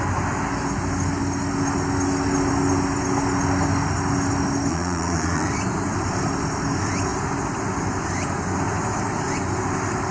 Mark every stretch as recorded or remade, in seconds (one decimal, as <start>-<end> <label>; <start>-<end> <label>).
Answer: 0.0-4.7 recorded; 4.7-5.5 remade; 5.5-10.1 recorded